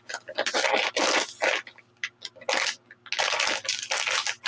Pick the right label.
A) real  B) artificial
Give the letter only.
A